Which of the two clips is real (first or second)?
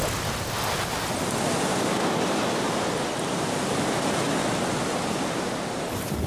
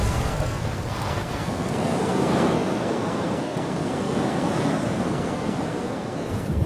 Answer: first